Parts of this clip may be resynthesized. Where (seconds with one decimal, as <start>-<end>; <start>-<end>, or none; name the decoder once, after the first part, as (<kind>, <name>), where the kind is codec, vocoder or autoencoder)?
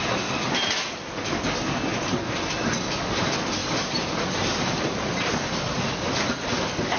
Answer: 3.6-5.4 (vocoder, BigVGAN v2)